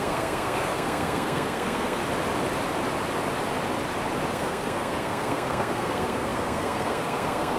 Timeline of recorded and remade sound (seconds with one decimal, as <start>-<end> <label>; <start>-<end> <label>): 0.0-2.0 remade; 2.0-4.3 recorded; 4.3-7.6 remade